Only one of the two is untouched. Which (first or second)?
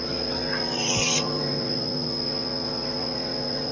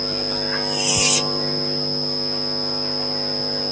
second